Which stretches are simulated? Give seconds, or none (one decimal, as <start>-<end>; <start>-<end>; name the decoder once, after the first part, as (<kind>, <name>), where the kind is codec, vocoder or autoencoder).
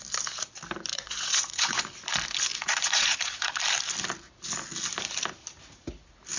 0.9-1.8 (vocoder, Vocos); 2.5-3.6